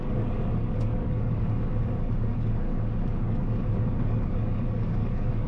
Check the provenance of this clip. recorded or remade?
remade